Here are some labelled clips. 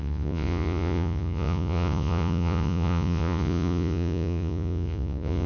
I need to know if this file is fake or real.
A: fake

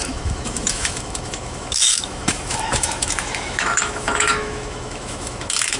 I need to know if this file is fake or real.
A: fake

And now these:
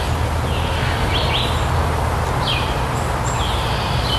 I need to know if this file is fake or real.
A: real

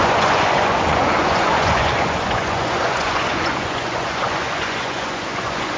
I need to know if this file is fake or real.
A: fake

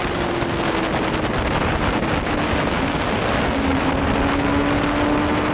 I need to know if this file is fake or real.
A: real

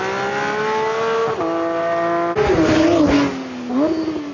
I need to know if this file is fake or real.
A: real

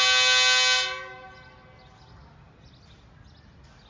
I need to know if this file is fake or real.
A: real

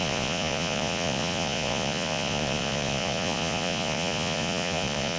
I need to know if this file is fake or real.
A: fake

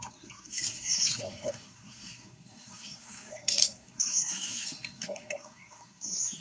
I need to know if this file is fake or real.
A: fake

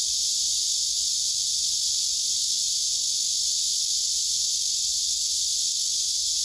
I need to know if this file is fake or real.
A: real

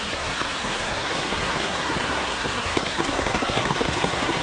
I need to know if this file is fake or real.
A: fake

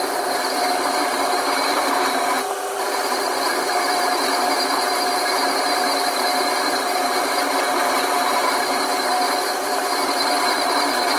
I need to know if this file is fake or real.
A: fake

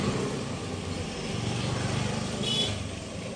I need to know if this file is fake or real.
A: real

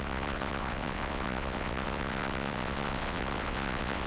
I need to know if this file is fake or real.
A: fake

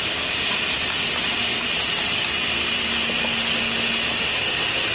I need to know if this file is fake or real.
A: real